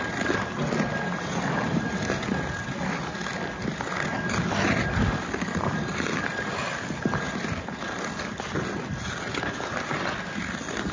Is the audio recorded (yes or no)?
yes